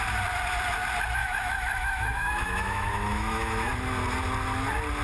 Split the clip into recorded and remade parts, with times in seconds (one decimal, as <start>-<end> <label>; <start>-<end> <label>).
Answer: 0.0-1.2 recorded; 1.2-3.7 remade; 3.7-5.0 recorded